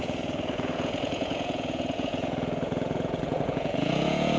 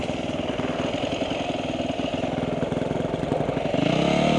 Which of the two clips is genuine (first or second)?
second